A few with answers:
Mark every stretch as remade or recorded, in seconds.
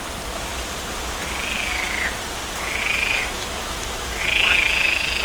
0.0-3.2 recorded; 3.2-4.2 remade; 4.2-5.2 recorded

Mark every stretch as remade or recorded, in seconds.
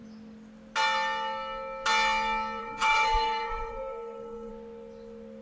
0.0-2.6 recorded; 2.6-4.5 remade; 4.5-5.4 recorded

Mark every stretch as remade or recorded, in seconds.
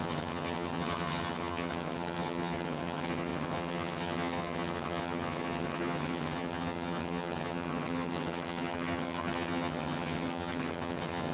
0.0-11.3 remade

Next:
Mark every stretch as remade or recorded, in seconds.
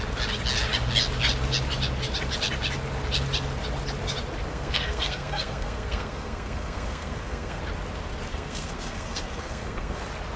0.0-4.5 recorded; 4.5-7.6 remade; 7.6-8.3 recorded; 8.3-10.0 remade; 10.0-10.4 recorded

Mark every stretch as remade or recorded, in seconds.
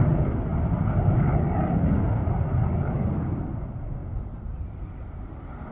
0.0-5.7 recorded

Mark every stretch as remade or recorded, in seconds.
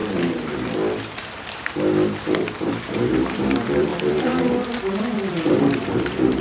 0.0-2.7 recorded; 2.7-6.4 remade